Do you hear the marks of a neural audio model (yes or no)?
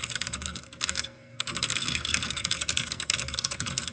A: yes